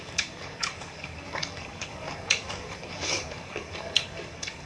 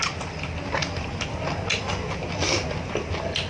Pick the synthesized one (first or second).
first